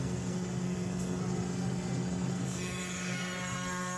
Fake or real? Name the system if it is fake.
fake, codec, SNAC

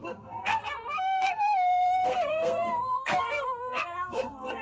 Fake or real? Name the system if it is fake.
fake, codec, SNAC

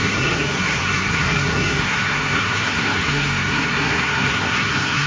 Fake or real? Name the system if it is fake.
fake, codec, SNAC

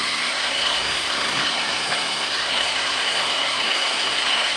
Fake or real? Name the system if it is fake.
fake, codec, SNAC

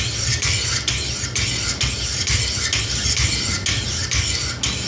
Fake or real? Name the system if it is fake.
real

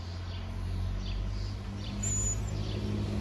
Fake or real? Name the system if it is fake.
real